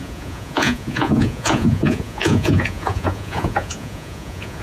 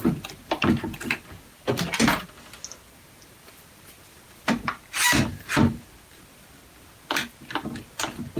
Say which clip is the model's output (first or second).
first